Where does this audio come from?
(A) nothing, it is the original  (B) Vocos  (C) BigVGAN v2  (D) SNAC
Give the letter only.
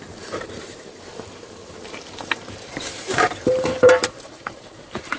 C